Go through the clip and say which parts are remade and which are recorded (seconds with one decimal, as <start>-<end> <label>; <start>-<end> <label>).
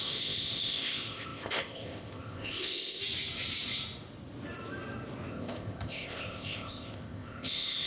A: 0.0-3.0 remade; 3.0-5.3 recorded; 5.3-7.9 remade